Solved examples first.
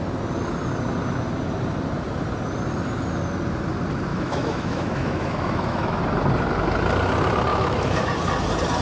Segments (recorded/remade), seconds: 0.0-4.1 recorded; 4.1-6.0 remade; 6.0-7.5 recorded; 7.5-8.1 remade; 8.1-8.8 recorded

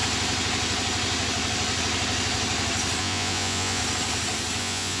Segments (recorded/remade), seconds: 0.0-3.0 recorded; 3.0-3.8 remade; 3.8-4.6 recorded; 4.6-5.0 remade

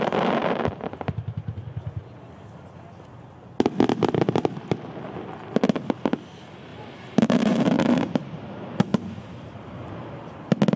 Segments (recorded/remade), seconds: 0.0-6.7 recorded; 6.7-8.0 remade; 8.0-8.9 recorded; 8.9-9.6 remade; 9.6-10.8 recorded

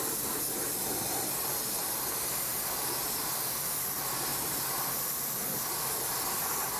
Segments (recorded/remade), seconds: 0.0-6.8 recorded

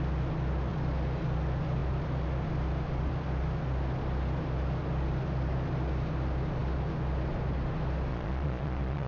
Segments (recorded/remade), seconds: 0.0-8.1 recorded; 8.1-9.1 remade

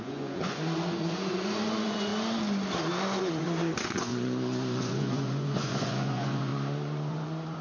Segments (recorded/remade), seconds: 0.0-2.1 remade; 2.1-3.2 recorded; 3.2-4.1 remade; 4.1-4.8 recorded; 4.8-6.5 remade; 6.5-7.1 recorded; 7.1-7.6 remade

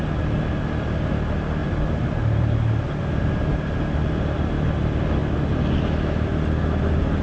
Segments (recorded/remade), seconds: 0.0-7.2 recorded

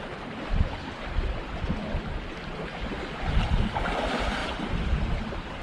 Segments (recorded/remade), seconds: 0.0-5.6 recorded